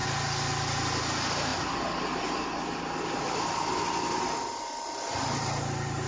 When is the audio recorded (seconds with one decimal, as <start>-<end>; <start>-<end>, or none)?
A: 0.0-6.1